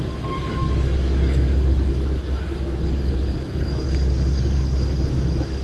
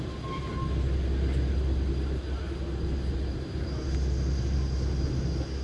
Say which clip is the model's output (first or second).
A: first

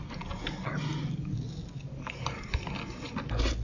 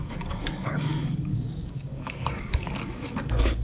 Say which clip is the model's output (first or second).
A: second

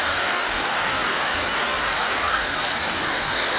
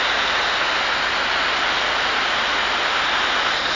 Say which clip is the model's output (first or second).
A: first